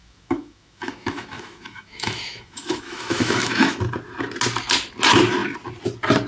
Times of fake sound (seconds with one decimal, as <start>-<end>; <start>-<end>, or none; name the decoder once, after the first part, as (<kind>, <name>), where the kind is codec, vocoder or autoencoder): 0.0-3.8 (autoencoder, DAC-VAE)